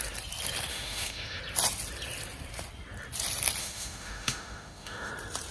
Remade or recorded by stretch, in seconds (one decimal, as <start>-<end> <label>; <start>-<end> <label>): 0.0-0.7 recorded; 0.7-1.4 remade; 1.4-3.6 recorded; 3.6-5.1 remade; 5.1-5.5 recorded